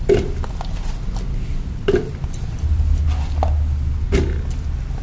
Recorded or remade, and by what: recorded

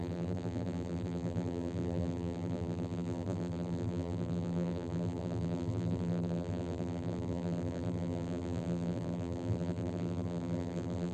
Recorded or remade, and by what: remade, vocoder, BigVGAN v2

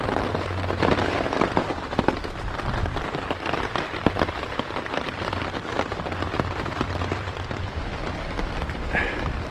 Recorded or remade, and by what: remade, vocoder, BigVGAN v2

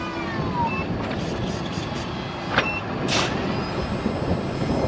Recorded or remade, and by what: recorded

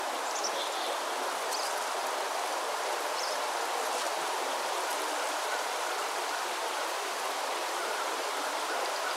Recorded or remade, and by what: recorded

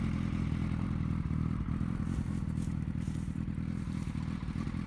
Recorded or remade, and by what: remade, vocoder, BigVGAN v2